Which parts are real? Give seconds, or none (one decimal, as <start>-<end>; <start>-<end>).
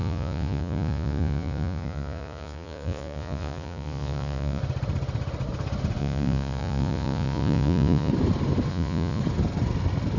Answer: 4.6-6.0; 8.1-8.7; 9.2-10.2